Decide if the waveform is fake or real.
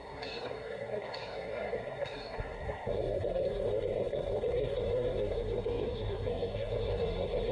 fake